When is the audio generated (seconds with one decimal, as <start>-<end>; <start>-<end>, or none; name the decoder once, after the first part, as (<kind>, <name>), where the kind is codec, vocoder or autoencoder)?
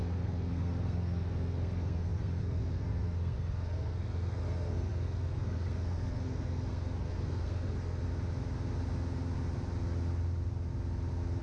0.0-8.0 (codec, SNAC)